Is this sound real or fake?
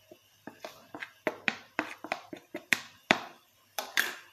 fake